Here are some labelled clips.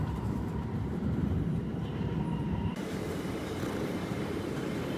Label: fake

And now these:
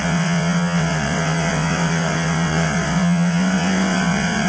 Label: fake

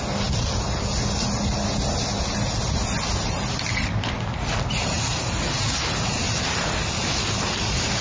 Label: real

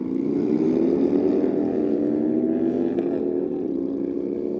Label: real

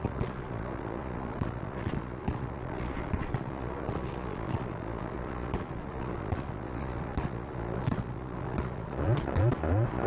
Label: fake